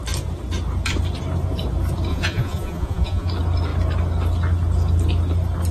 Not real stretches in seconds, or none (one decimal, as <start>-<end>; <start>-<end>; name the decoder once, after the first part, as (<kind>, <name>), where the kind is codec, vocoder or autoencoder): 2.1-3.3 (vocoder, Vocos)